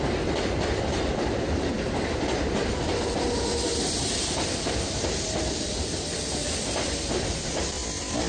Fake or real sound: fake